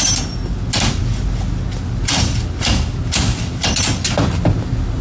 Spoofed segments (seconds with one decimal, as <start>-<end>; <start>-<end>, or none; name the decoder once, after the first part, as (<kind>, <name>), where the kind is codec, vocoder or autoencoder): none